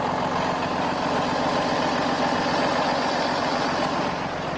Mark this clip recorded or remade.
recorded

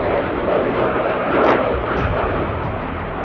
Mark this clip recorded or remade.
remade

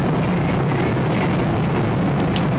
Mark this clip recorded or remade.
recorded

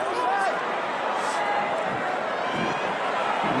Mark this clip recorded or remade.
recorded